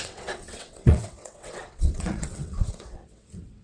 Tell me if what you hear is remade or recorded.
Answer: remade